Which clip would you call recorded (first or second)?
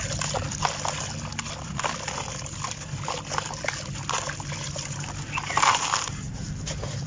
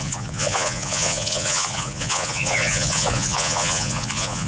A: first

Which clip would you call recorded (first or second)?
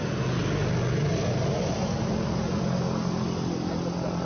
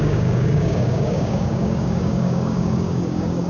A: first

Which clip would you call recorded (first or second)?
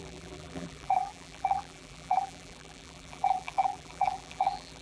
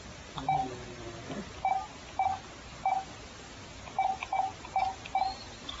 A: second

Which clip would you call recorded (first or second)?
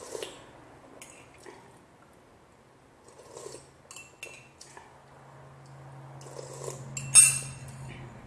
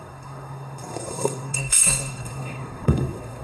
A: first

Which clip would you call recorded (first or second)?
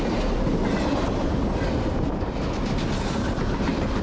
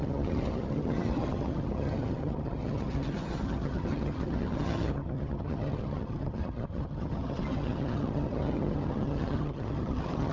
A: first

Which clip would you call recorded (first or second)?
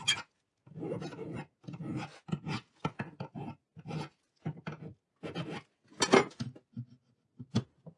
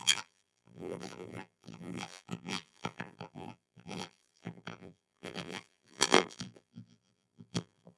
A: first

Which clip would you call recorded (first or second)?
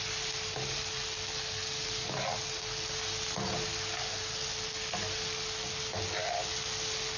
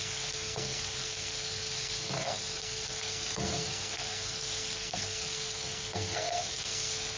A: first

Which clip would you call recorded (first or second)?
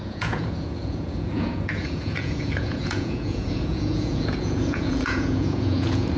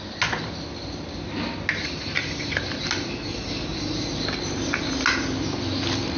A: second